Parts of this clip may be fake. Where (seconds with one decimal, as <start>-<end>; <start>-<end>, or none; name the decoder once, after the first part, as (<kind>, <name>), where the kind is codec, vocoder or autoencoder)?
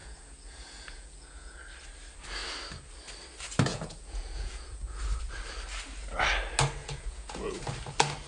0.0-1.6 (vocoder, Vocos); 3.7-5.0; 6.8-7.7